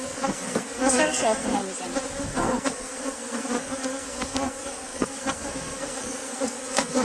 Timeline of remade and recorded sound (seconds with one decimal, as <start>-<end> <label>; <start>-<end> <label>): 0.0-1.6 remade; 1.6-2.2 recorded; 2.2-7.0 remade